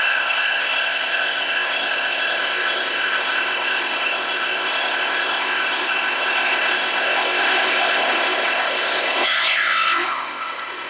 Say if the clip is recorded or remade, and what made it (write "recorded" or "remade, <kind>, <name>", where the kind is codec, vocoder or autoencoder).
remade, codec, ZipCodec